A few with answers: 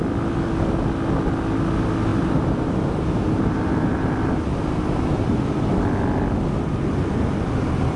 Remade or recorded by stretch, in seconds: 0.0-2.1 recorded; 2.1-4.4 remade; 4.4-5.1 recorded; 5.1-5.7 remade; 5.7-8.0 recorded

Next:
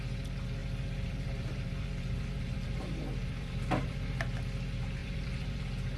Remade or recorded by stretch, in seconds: 0.0-0.6 recorded; 0.6-4.2 remade; 4.2-5.0 recorded; 5.0-5.6 remade; 5.6-6.0 recorded

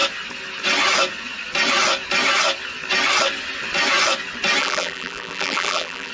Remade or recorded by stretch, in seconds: 0.0-4.6 recorded; 4.6-6.1 remade

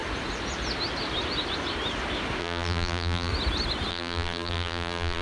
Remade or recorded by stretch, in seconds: 0.0-2.4 recorded; 2.4-3.3 remade; 3.3-3.9 recorded; 3.9-5.2 remade

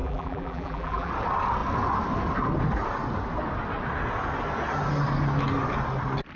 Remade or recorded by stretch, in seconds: 0.0-1.1 remade; 1.1-6.4 recorded